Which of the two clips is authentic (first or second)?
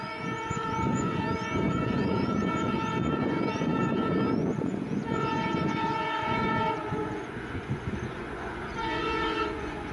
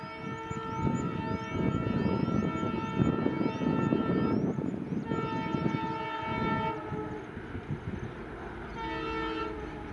second